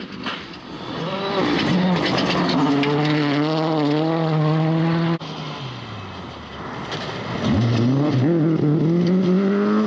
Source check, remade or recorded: recorded